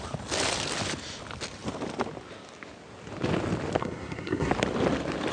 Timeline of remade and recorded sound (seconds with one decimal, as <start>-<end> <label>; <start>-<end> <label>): 0.0-3.8 recorded; 3.8-4.5 remade; 4.5-5.3 recorded